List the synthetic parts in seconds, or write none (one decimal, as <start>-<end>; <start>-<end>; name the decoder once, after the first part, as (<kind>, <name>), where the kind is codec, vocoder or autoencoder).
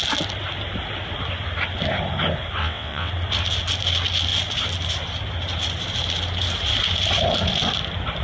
2.6-3.1 (vocoder, WaveNeXt)